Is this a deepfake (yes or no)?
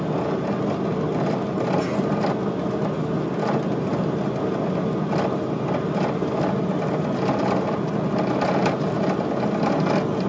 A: no